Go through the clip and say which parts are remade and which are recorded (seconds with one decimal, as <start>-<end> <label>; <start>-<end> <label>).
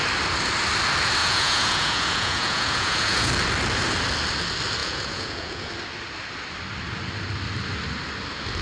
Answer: 0.0-1.2 recorded; 1.2-3.3 remade; 3.3-4.8 recorded; 4.8-5.7 remade; 5.7-8.6 recorded